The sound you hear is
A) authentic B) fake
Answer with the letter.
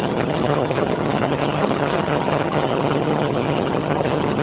B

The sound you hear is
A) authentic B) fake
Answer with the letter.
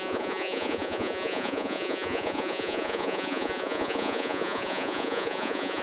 B